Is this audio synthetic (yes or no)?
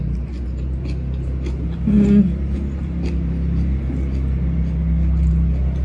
no